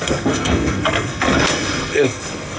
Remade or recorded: remade